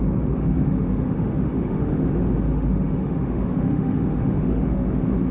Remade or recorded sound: remade